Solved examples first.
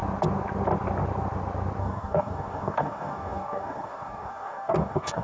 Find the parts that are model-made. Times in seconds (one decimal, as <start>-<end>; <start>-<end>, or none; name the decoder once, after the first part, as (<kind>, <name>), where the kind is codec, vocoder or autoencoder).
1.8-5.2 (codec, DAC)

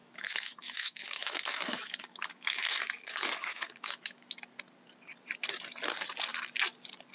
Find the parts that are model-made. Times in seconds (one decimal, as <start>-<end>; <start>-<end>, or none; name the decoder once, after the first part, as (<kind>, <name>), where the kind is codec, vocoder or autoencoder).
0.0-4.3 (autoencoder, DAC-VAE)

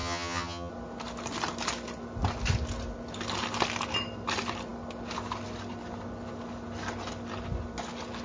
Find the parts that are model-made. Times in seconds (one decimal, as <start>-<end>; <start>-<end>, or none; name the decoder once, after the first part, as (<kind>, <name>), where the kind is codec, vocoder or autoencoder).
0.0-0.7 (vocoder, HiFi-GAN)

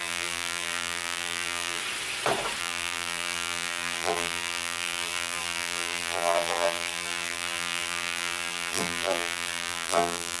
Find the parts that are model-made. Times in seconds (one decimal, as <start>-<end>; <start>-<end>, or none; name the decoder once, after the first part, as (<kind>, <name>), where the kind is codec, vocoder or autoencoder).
0.0-1.8 (vocoder, BigVGAN v2); 2.6-10.4

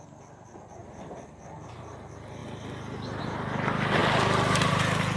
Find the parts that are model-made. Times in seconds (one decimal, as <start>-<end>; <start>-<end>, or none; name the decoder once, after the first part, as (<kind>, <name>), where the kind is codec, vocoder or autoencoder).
0.8-1.5 (vocoder, BigVGAN v2)

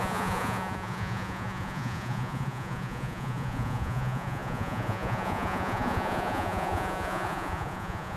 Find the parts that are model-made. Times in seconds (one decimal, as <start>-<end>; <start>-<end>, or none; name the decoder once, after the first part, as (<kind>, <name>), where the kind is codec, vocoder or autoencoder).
0.0-8.2 (vocoder, Vocos)

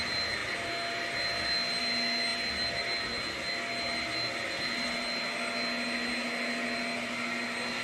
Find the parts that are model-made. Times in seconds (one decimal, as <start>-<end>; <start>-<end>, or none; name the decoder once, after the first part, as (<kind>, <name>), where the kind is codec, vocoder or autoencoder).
none

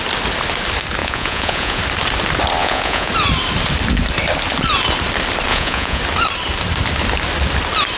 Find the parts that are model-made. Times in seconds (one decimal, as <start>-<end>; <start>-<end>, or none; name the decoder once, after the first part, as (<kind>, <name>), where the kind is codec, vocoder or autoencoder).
1.0-1.8 (vocoder, Vocos); 2.6-3.1; 5.5-6.0